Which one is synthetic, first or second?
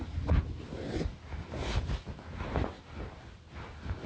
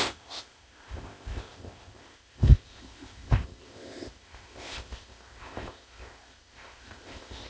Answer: second